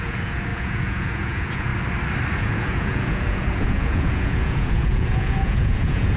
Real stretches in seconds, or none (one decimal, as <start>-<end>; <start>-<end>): 1.7-2.4